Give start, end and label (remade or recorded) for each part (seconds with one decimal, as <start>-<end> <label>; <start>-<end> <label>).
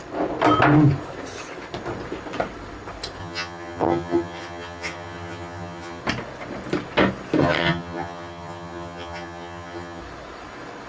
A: 0.0-3.2 recorded; 3.2-6.0 remade; 6.0-7.4 recorded; 7.4-10.0 remade; 10.0-10.9 recorded